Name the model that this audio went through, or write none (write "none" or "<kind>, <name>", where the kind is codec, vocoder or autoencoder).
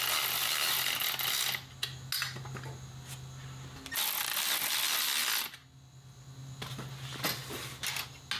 none